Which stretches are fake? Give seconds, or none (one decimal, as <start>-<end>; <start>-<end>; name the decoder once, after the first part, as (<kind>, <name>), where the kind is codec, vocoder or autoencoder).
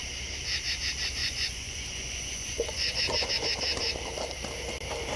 1.2-3.3 (vocoder, Vocos)